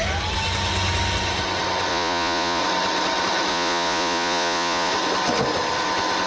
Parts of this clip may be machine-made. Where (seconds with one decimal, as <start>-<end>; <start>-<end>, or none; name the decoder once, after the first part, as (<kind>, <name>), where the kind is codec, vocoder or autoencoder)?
1.9-2.6 (vocoder, Vocos); 3.5-4.9